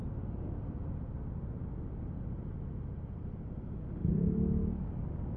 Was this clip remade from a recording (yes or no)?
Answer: no